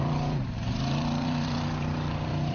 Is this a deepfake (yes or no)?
yes